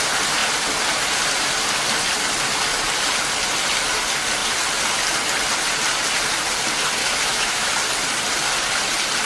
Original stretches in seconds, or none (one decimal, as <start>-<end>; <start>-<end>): 0.0-7.0; 7.7-9.3